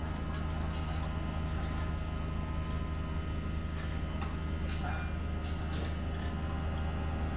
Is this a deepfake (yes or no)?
no